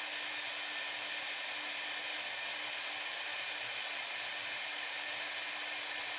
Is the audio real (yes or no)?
yes